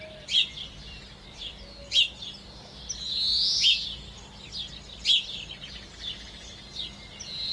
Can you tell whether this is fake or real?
real